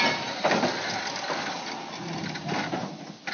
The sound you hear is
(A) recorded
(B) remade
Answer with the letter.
A